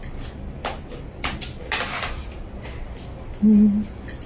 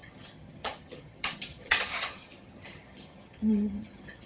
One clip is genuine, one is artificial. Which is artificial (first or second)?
second